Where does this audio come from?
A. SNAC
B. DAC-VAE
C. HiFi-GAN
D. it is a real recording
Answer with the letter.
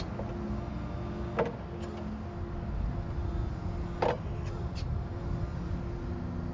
D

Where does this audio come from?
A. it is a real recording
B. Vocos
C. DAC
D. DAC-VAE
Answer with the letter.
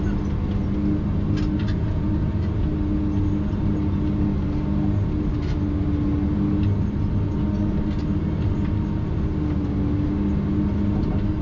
A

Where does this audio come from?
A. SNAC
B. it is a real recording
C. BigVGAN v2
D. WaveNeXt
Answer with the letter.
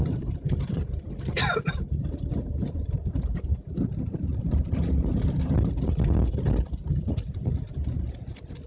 C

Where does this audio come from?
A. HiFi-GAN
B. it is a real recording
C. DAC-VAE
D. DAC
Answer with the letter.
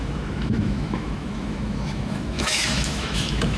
C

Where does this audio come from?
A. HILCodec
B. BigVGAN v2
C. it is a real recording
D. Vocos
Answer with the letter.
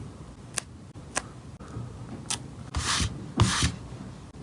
C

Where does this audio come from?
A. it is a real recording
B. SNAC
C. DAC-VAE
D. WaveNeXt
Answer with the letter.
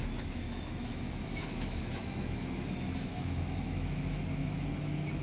C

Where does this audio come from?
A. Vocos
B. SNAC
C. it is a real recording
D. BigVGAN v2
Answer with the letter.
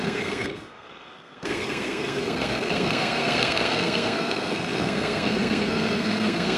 B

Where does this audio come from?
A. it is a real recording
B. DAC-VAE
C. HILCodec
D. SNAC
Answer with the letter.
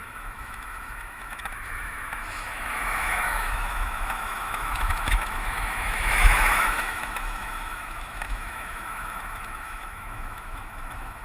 B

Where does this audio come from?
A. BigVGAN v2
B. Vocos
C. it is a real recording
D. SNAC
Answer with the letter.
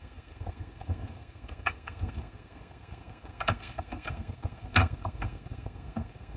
D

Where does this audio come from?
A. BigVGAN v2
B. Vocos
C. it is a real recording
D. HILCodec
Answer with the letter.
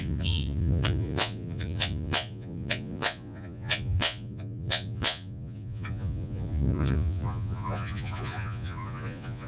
B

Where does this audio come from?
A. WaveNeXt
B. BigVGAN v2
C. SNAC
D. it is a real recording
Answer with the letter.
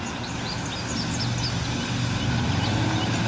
D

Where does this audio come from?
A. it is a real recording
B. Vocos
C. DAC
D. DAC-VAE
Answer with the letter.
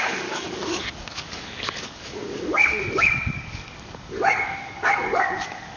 C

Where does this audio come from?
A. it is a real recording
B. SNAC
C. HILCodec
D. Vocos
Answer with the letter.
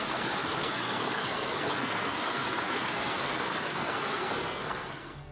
B